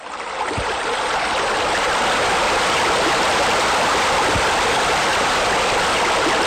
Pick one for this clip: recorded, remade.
recorded